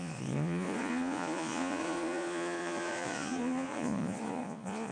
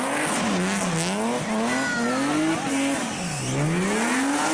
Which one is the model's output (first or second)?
first